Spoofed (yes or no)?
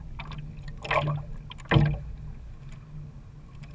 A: no